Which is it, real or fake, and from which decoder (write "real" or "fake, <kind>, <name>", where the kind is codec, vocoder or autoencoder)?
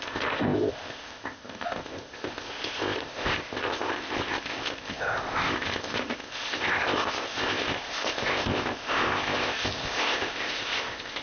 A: fake, codec, ZipCodec